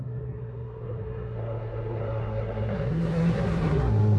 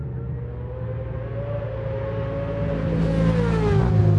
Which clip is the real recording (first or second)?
second